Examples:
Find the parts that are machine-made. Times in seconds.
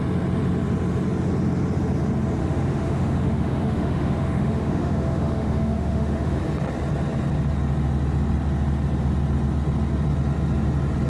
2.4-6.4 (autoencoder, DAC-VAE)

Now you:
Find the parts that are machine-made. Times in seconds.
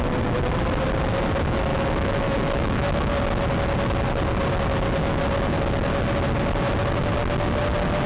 1.7-3.1 (autoencoder, DAC-VAE)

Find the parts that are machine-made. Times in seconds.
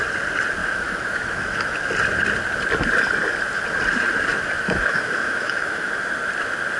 0.6-1.9 (autoencoder, DAC-VAE); 4.3-5.9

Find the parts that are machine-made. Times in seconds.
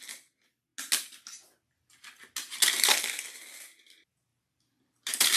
none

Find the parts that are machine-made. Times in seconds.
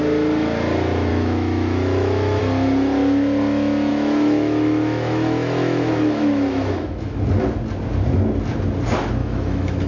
1.1-2.4 (autoencoder, DAC-VAE); 3.9-7.2; 9.2-9.9